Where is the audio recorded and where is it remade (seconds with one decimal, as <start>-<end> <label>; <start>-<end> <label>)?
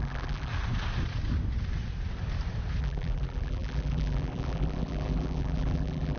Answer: 0.0-0.5 remade; 0.5-2.8 recorded; 2.8-6.2 remade